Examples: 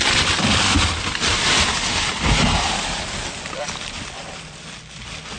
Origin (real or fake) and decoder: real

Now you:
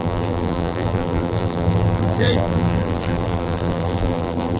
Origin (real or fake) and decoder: fake, vocoder, BigVGAN v2